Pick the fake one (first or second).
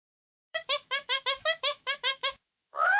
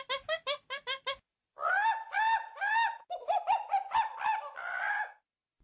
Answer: first